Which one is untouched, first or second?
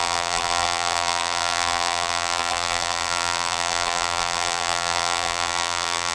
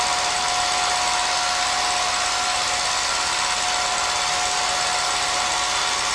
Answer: second